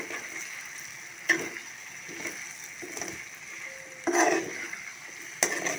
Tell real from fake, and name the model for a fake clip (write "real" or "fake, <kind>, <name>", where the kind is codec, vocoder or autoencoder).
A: real